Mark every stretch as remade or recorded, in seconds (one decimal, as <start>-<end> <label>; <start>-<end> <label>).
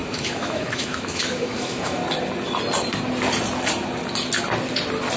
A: 0.0-2.0 remade; 2.0-5.2 recorded